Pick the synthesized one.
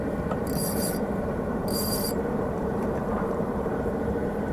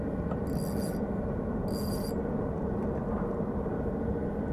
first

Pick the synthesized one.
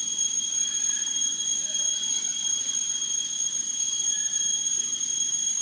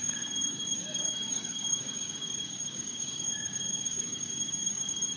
second